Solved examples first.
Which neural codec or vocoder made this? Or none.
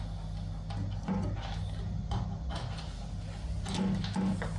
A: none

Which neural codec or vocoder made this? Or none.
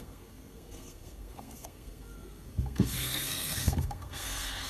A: codec, SNAC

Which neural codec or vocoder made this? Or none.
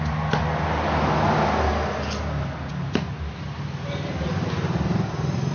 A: none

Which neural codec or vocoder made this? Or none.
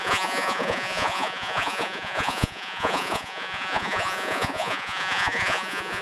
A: vocoder, Vocos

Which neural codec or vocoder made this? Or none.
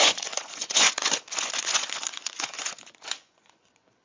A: vocoder, Vocos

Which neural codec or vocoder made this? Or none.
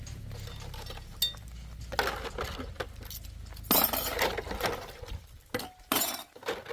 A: none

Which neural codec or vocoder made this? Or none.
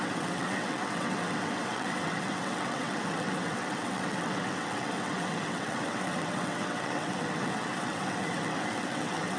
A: vocoder, WaveNeXt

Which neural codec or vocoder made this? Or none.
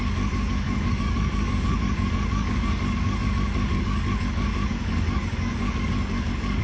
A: codec, DAC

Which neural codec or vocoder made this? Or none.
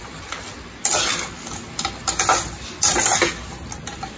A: none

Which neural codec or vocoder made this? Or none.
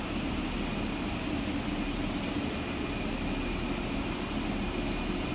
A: none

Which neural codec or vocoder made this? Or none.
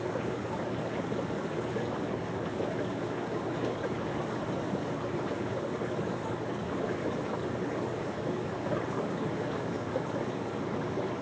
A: codec, DAC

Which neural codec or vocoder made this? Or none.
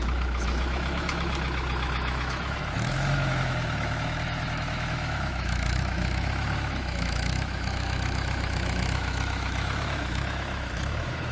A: autoencoder, DAC-VAE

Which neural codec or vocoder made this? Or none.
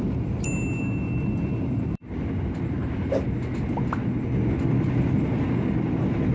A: none